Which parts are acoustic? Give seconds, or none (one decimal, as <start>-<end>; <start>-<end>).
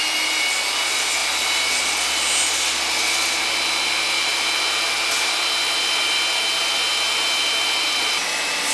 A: 0.0-8.7